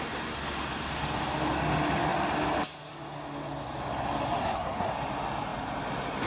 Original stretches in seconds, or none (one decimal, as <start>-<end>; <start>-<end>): 0.0-4.4; 4.9-6.3